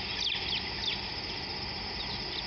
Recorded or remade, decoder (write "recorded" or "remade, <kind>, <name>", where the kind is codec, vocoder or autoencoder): recorded